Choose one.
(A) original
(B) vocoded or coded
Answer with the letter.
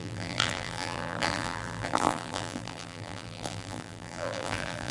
B